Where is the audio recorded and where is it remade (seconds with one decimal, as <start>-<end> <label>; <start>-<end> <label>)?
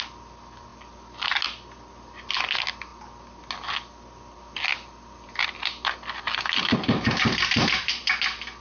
0.0-8.6 recorded